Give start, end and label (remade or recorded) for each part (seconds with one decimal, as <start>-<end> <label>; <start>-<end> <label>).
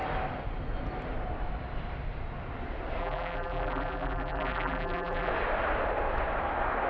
0.0-3.0 recorded; 3.0-5.3 remade; 5.3-6.9 recorded